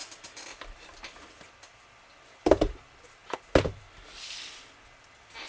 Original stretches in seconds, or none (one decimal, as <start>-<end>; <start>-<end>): 0.0-5.5